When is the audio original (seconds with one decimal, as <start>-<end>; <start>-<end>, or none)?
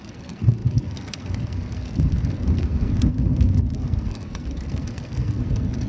none